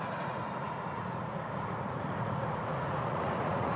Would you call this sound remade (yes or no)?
yes